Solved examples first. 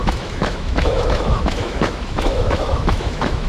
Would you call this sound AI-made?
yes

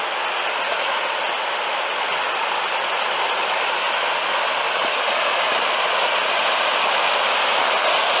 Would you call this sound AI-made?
no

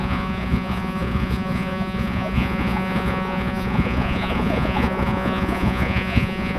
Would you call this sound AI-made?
yes